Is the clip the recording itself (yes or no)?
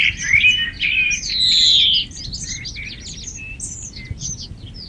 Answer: yes